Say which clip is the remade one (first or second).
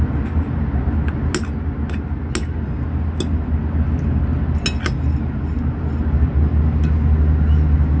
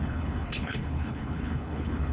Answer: second